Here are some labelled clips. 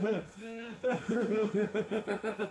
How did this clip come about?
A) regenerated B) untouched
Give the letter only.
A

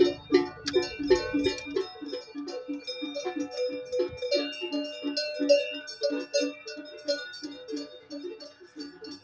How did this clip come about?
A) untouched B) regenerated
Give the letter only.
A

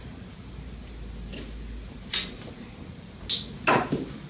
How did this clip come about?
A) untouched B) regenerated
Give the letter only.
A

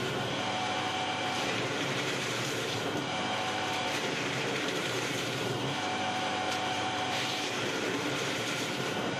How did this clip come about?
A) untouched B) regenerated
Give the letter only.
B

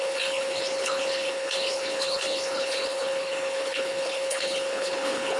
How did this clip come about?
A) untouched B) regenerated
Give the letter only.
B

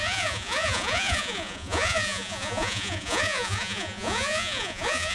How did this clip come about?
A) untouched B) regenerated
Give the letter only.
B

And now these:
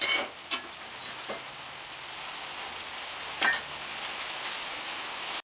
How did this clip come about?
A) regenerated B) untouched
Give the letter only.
B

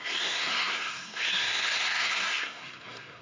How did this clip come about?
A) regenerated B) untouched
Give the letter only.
A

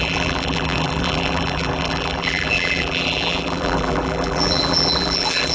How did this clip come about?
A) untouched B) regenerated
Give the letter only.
B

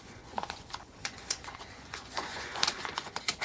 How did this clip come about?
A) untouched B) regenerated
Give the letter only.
B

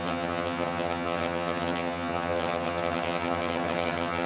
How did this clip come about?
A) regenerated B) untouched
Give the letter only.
A